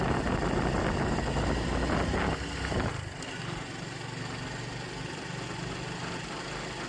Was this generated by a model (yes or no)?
no